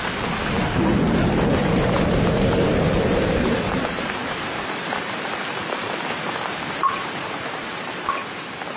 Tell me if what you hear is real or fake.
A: fake